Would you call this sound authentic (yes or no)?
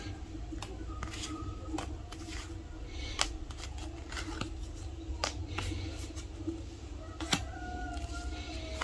yes